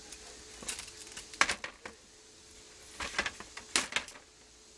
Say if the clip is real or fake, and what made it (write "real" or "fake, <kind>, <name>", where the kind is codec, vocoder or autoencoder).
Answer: real